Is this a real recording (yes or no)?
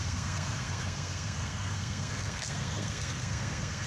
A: no